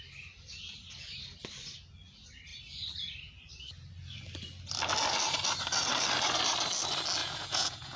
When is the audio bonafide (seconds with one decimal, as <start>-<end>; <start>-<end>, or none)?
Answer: 0.0-7.2